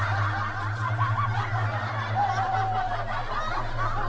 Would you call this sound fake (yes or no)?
no